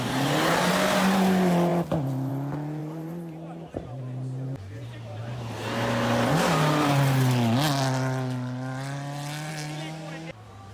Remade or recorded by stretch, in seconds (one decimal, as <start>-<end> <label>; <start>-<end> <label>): 0.0-2.8 recorded; 2.8-4.0 remade; 4.0-10.7 recorded